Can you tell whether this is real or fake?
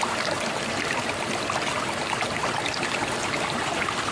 real